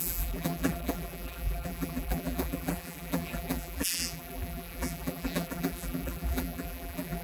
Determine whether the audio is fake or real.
fake